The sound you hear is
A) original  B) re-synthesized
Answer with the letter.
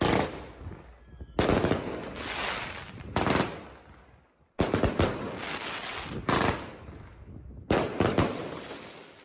A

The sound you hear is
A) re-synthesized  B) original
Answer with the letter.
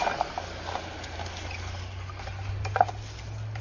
B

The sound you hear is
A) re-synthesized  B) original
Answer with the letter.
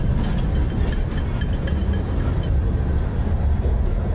B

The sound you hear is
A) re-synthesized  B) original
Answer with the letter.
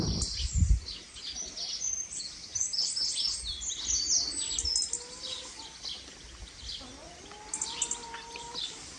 B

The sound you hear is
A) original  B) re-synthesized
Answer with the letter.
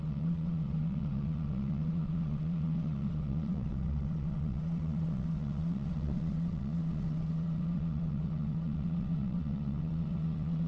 B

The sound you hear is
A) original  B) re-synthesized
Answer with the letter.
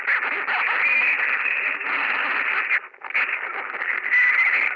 A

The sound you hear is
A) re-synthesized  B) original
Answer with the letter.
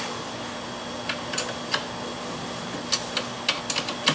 B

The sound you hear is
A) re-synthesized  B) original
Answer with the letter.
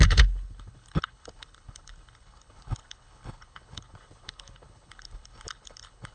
A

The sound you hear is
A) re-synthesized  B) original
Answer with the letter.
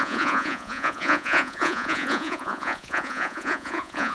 A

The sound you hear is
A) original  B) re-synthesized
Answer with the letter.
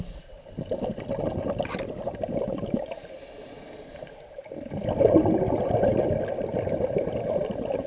A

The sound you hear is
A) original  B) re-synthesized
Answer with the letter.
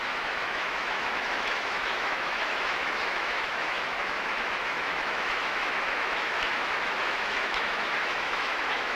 B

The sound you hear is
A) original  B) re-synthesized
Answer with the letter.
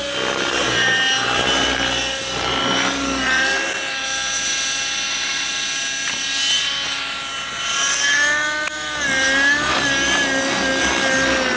A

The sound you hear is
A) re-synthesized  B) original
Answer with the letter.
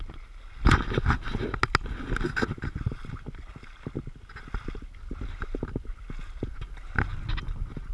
B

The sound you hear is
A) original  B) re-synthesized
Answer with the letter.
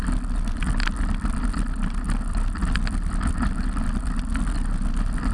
A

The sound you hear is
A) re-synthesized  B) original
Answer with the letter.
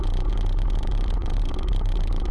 B